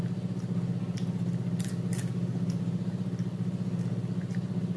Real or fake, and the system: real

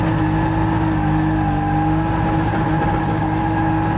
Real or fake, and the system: real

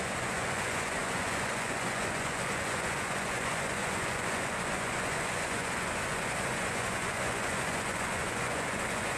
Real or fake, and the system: fake, vocoder, Vocos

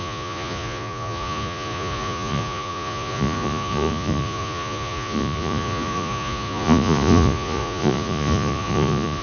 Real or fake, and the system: fake, vocoder, Vocos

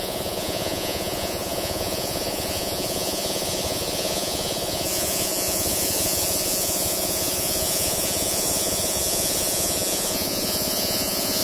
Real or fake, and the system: fake, vocoder, Vocos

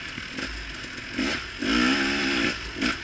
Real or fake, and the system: real